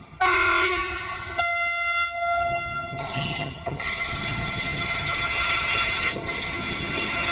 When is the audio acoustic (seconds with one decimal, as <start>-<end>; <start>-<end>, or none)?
none